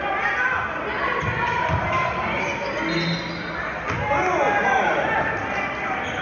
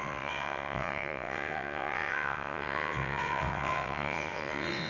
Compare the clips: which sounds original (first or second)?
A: first